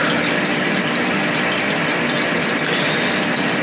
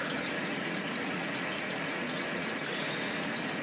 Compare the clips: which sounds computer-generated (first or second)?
second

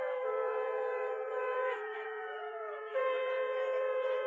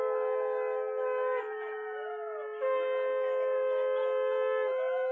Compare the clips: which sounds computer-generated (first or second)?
first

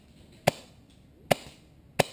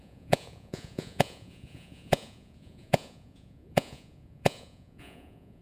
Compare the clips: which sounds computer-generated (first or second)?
second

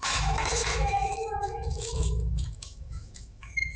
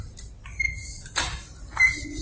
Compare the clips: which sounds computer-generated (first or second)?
first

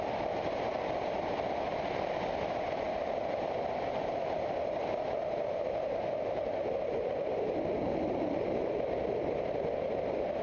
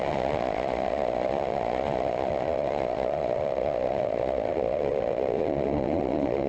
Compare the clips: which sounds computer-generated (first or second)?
second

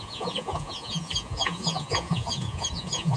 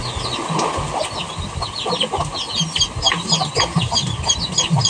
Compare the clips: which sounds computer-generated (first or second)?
first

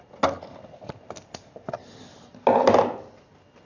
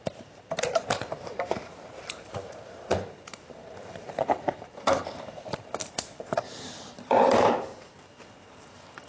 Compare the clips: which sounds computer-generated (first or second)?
second